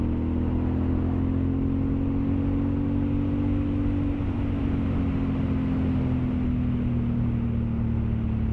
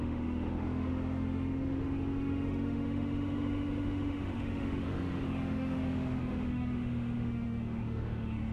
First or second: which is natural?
first